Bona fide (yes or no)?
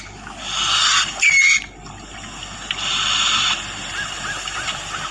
yes